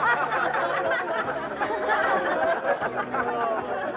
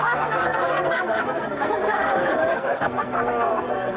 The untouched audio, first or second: first